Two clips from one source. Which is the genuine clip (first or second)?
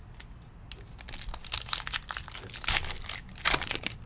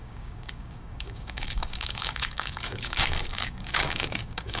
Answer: first